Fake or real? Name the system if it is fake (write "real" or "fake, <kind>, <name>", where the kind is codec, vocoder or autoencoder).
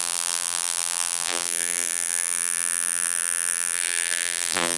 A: fake, vocoder, BigVGAN v2